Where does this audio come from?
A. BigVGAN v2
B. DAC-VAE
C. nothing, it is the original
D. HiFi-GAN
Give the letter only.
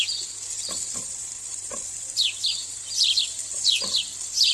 A